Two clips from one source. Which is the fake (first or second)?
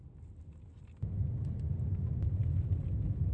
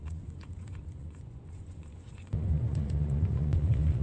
second